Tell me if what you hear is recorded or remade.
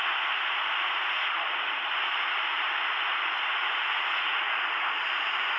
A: remade